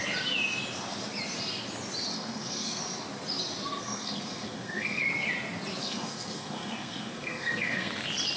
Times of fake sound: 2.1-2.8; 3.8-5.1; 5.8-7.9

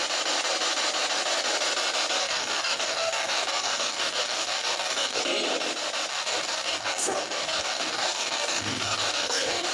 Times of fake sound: 2.2-5.2; 6.1-9.7

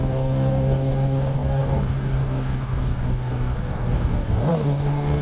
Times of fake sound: 0.0-5.2

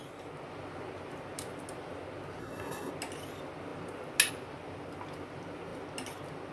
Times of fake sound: 2.4-2.9

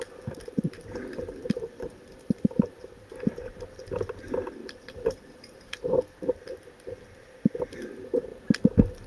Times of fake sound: 1.4-3.1; 4.6-6.4

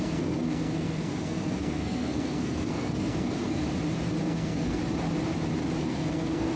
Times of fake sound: 0.0-3.6; 4.2-4.8; 5.8-6.6

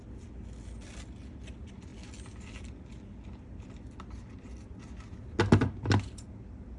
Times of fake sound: none

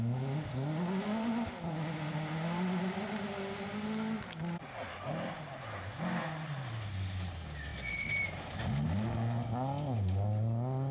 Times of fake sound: none